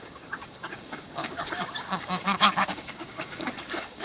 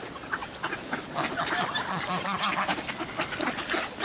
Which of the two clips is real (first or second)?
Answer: second